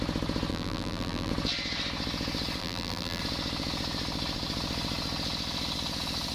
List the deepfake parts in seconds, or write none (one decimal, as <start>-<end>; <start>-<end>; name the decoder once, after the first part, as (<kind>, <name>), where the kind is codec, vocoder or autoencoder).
0.5-1.3 (vocoder, BigVGAN v2); 2.6-3.2